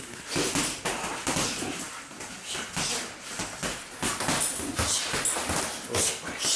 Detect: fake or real real